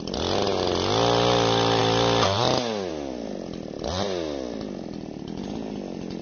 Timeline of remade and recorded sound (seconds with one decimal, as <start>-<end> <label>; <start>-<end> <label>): 0.0-6.2 recorded